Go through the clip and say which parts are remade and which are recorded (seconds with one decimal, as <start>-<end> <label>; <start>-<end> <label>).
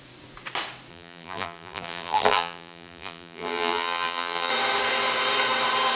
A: 0.0-0.9 recorded; 0.9-4.5 remade; 4.5-6.0 recorded